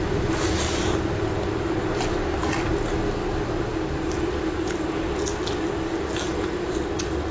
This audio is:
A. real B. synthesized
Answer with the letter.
A